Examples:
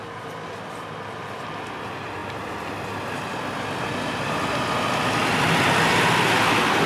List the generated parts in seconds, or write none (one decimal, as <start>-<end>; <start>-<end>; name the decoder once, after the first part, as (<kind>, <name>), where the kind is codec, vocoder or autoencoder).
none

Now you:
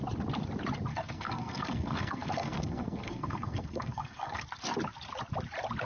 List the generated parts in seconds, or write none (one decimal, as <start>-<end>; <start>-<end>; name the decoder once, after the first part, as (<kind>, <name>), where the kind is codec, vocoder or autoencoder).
0.9-4.4 (codec, SNAC)

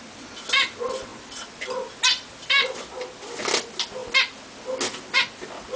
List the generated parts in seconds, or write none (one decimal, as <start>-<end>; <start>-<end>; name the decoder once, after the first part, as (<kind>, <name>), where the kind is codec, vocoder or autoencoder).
none

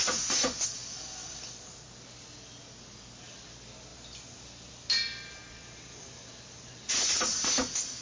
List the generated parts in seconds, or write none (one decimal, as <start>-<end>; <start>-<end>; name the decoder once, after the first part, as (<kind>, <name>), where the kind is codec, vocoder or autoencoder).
none

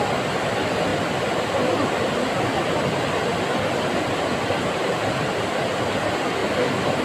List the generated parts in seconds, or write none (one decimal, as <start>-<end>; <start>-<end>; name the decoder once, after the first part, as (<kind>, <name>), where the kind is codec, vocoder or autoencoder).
0.9-1.9 (vocoder, BigVGAN v2)

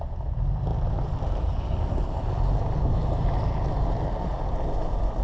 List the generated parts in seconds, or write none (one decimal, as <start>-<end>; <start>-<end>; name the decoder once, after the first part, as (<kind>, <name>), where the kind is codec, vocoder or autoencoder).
none